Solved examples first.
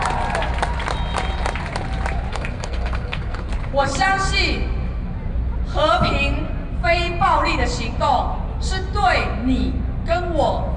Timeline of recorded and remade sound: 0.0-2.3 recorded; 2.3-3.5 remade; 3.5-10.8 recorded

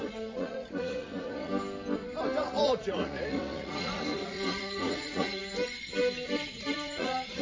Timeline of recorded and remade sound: 0.0-1.5 remade; 1.5-2.4 recorded; 2.4-5.4 remade; 5.4-6.5 recorded; 6.5-7.4 remade

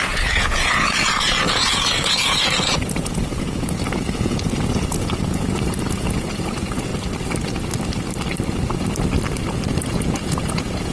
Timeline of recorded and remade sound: 0.0-6.9 remade; 6.9-9.8 recorded; 9.8-10.9 remade

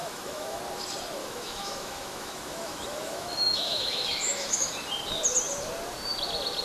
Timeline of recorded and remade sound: 0.0-0.6 remade; 0.6-1.2 recorded; 1.2-4.7 remade; 4.7-6.6 recorded

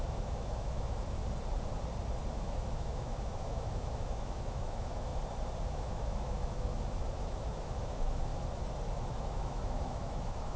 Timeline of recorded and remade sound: 0.0-1.2 remade; 1.2-2.3 recorded; 2.3-5.1 remade; 5.1-5.7 recorded; 5.7-8.3 remade; 8.3-9.0 recorded; 9.0-10.6 remade

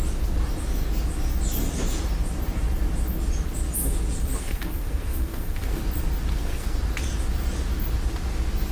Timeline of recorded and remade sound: 0.0-4.2 recorded; 4.2-5.8 remade; 5.8-6.3 recorded; 6.3-6.8 remade; 6.8-8.7 recorded

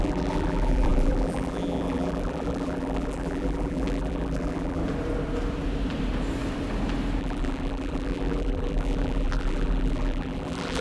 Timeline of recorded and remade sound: 0.0-4.8 remade; 4.8-7.2 recorded; 7.2-10.8 remade

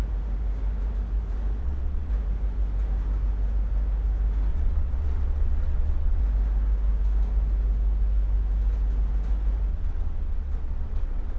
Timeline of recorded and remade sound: 0.0-1.6 recorded; 1.6-2.1 remade; 2.1-4.5 recorded; 4.5-6.2 remade; 6.2-9.7 recorded; 9.7-11.4 remade